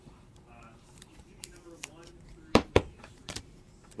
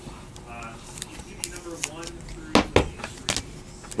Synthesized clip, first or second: first